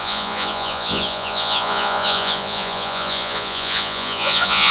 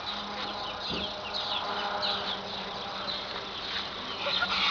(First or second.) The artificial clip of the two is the first